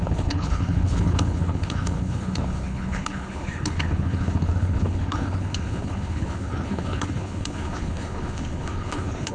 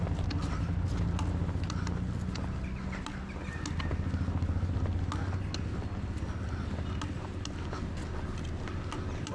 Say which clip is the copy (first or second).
first